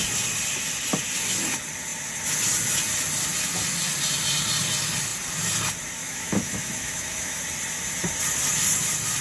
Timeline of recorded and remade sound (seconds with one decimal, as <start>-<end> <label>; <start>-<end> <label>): 0.0-6.0 recorded; 6.0-7.4 remade; 7.4-9.2 recorded